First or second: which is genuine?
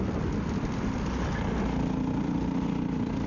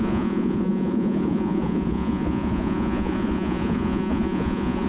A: first